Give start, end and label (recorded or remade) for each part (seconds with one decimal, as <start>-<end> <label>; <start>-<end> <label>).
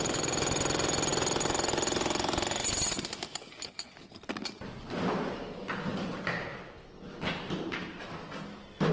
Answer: 0.0-8.9 recorded